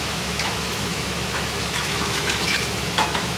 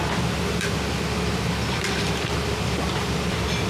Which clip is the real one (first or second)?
second